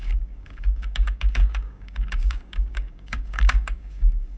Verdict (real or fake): fake